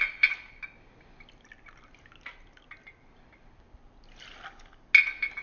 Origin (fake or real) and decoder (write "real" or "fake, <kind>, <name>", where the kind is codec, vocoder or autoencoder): real